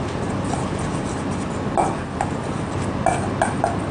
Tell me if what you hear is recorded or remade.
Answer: recorded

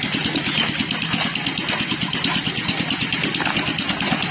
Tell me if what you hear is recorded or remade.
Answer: recorded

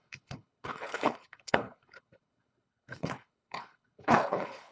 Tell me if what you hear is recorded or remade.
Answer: remade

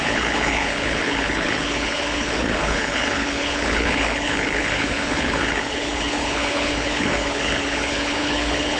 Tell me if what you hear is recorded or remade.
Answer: remade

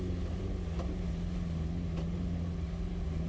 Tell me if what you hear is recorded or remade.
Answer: recorded